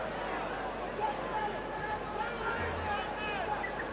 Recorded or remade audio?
recorded